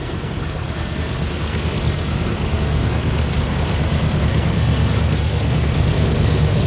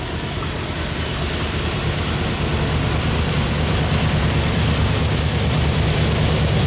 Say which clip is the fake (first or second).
first